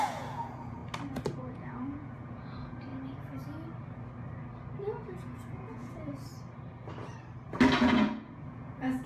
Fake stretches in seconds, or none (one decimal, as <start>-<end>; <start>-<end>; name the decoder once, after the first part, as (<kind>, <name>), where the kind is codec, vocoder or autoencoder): 0.0-0.8 (vocoder, Vocos); 1.4-2.9; 5.1-6.3; 7.8-9.1